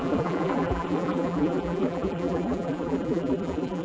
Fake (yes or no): yes